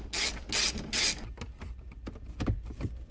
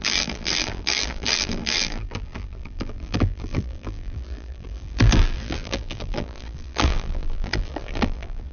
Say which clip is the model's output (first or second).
second